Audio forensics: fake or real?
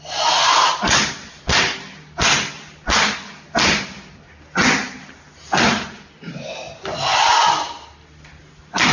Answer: real